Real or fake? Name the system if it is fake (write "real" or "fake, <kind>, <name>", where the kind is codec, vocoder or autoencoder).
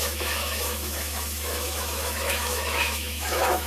fake, autoencoder, DAC-VAE